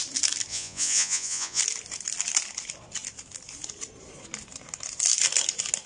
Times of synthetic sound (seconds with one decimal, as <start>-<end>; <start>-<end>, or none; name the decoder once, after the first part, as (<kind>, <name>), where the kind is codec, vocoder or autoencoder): 0.5-1.6 (vocoder, Vocos)

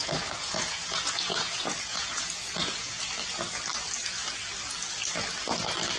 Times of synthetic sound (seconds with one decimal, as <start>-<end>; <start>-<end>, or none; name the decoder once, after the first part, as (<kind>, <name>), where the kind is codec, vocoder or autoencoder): 0.0-3.0 (vocoder, Vocos)

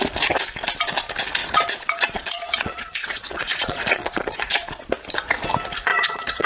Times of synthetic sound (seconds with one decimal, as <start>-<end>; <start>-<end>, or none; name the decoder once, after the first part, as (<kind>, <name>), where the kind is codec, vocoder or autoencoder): 1.4-4.9 (vocoder, Vocos); 5.9-6.5